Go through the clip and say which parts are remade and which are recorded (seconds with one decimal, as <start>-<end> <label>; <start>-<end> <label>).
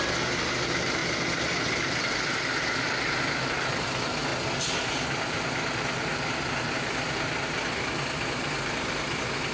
0.0-9.5 recorded